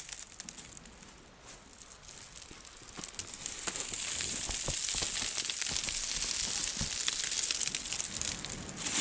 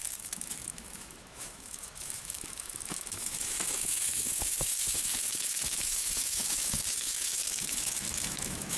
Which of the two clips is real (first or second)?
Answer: first